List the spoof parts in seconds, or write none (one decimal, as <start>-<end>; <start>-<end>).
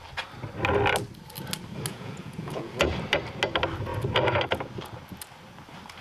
1.9-2.9